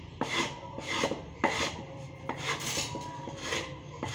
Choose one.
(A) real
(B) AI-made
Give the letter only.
A